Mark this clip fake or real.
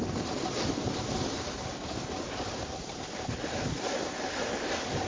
real